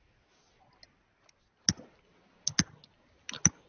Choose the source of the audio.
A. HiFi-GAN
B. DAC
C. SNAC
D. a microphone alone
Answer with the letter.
D